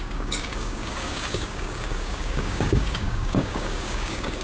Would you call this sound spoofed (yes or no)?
yes